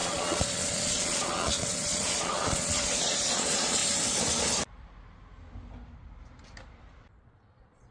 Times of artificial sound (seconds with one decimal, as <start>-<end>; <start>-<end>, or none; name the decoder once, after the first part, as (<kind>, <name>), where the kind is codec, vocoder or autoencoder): 0.0-3.8 (vocoder, Vocos); 7.2-7.9